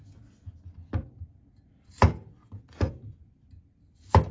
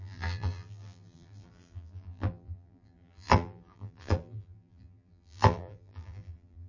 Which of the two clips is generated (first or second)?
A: second